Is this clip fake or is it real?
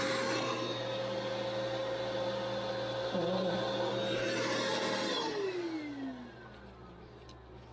real